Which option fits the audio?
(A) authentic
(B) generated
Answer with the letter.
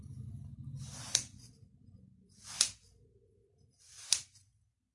A